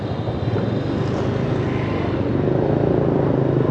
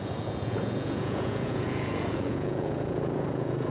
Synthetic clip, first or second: second